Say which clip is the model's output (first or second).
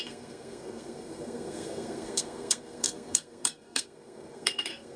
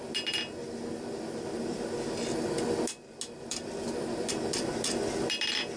first